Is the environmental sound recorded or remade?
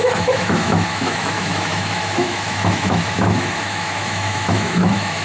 remade